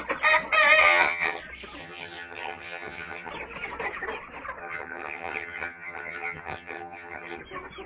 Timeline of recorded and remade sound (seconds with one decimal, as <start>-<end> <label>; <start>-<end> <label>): 0.0-0.8 recorded; 0.8-1.4 remade; 1.4-1.8 recorded; 1.8-3.3 remade; 3.3-4.6 recorded; 4.6-7.4 remade; 7.4-7.9 recorded